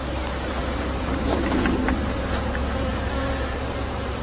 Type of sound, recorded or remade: remade